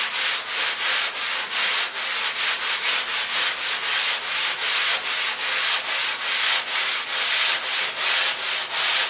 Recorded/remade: recorded